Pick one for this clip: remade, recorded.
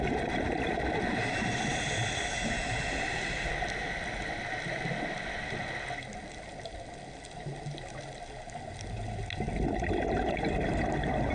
recorded